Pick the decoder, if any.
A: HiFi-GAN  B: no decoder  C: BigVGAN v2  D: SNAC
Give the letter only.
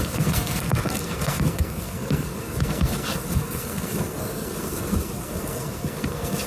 D